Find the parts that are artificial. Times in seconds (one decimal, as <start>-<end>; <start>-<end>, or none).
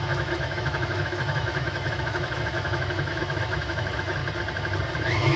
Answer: 0.0-4.2; 4.9-5.4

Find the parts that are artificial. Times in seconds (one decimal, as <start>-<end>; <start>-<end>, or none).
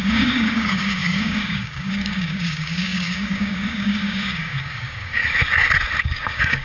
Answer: 0.0-5.2; 6.0-6.6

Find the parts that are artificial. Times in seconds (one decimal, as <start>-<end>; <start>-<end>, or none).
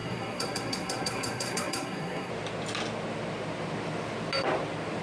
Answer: 0.0-2.3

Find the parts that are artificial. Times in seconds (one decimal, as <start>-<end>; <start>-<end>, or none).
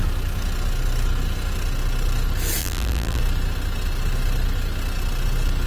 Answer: 2.6-3.2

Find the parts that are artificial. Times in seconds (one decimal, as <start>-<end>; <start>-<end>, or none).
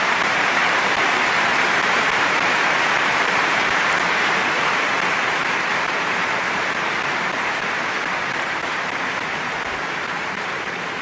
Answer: 0.0-0.6; 1.6-11.0